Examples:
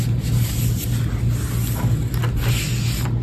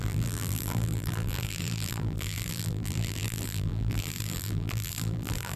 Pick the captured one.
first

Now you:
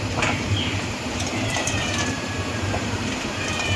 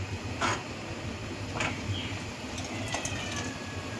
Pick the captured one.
second